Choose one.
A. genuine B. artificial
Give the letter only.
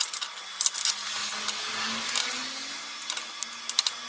A